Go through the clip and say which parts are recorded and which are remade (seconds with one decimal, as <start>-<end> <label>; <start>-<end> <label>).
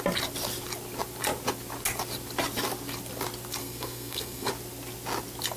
0.0-3.6 recorded; 3.6-4.5 remade; 4.5-5.6 recorded